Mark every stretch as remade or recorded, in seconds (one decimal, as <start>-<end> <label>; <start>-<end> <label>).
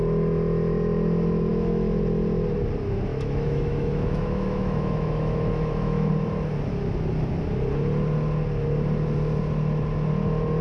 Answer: 0.0-1.5 recorded; 1.5-2.0 remade; 2.0-3.1 recorded; 3.1-6.1 remade; 6.1-10.6 recorded